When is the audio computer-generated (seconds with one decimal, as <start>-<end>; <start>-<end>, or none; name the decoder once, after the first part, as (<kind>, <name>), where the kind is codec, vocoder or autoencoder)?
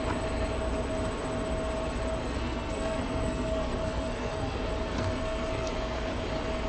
2.2-6.2 (codec, SNAC)